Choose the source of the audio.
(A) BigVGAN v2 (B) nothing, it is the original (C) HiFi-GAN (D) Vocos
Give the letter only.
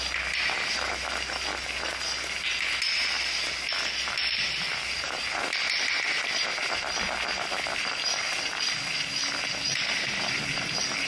B